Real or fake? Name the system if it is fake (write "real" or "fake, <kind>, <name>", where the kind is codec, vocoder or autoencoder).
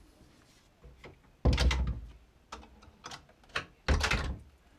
real